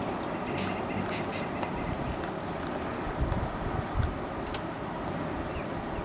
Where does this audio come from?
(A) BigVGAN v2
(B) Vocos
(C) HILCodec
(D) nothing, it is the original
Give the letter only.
D